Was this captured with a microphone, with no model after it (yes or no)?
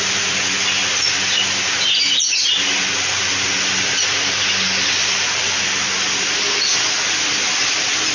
yes